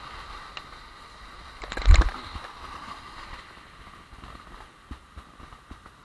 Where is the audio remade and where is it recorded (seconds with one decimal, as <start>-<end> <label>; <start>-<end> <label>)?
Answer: 0.0-6.0 recorded